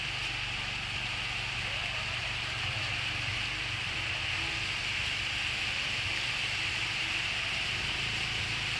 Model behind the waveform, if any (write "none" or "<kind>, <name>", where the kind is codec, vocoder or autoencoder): vocoder, BigVGAN v2